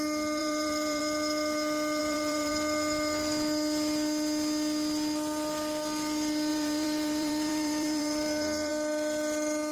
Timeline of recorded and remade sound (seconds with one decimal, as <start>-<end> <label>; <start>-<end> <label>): 0.0-0.4 recorded; 0.4-1.0 remade; 1.0-2.0 recorded; 2.0-2.5 remade; 2.5-6.5 recorded; 6.5-8.7 remade; 8.7-9.7 recorded